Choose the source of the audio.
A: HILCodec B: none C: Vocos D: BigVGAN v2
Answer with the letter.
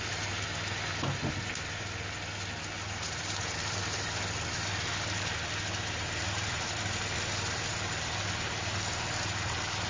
B